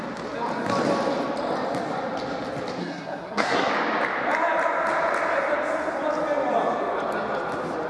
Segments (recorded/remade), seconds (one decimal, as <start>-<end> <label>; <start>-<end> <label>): 0.0-2.8 recorded; 2.8-3.7 remade; 3.7-7.9 recorded